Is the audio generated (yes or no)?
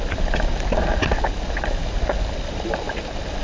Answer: no